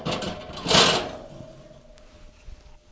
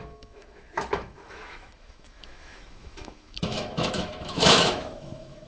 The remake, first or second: second